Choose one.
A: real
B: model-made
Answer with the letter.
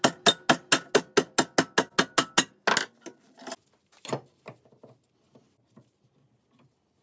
A